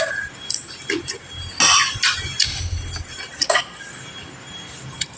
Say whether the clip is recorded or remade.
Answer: recorded